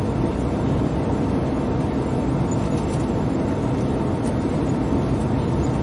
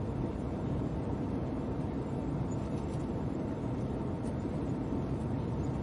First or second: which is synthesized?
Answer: second